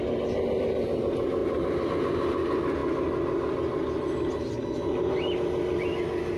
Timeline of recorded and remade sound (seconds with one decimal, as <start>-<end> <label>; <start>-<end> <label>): 0.0-1.4 recorded; 1.4-1.9 remade; 1.9-6.4 recorded